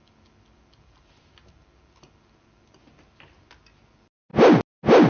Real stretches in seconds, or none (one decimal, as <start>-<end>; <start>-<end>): 0.0-5.1